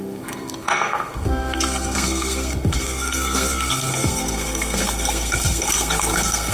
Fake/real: fake